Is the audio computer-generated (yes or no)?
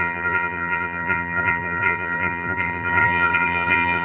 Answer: yes